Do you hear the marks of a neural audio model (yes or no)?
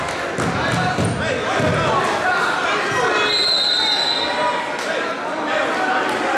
no